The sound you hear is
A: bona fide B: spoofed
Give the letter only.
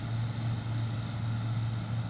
A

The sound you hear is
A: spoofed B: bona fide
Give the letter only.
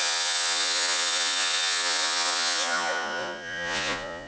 A